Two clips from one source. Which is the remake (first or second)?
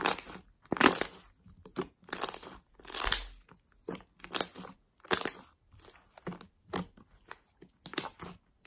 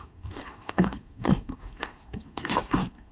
second